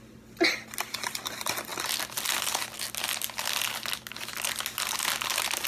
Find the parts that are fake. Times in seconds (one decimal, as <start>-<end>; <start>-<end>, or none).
none